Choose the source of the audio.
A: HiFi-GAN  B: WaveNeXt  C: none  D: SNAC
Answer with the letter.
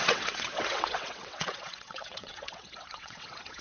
B